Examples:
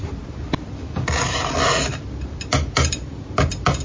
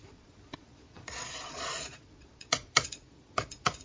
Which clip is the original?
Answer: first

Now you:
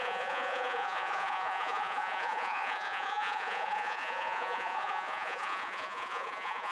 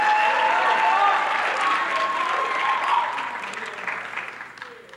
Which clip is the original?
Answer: second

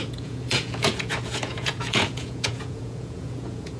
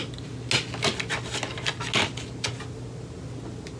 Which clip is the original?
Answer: second